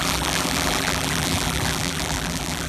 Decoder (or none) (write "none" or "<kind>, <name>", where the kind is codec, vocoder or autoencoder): vocoder, BigVGAN v2